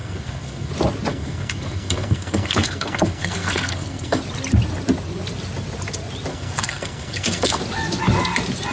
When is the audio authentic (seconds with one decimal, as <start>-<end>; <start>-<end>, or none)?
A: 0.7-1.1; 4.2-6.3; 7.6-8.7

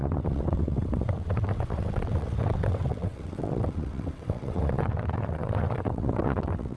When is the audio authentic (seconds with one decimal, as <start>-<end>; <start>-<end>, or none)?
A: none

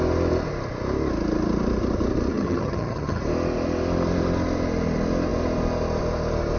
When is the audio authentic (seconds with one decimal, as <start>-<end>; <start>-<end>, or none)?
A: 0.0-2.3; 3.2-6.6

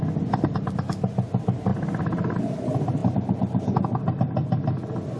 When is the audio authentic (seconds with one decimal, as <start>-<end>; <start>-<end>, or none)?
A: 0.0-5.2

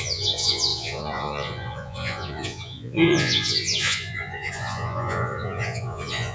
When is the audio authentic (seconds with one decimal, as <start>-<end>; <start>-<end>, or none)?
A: none